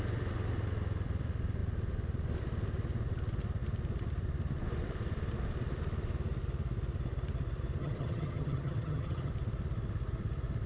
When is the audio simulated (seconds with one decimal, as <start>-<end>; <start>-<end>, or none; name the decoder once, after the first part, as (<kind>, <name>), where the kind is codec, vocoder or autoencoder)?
7.8-9.3 (vocoder, HiFi-GAN)